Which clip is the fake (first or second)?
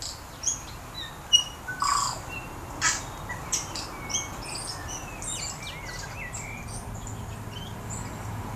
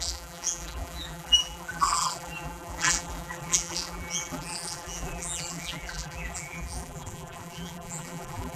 second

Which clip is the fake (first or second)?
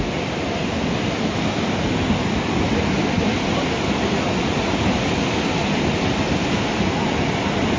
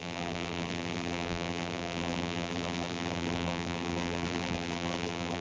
second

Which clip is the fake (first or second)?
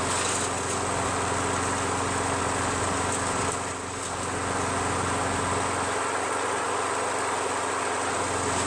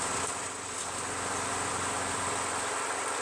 second